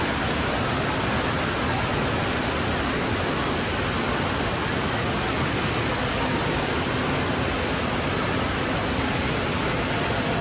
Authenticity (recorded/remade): recorded